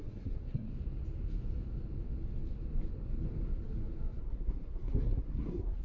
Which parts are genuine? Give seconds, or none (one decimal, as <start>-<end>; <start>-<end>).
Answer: 0.7-4.2